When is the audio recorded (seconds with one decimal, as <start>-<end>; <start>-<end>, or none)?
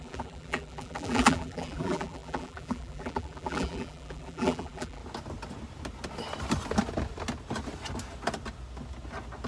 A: 5.0-9.5